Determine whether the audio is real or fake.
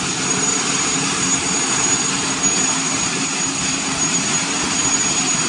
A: fake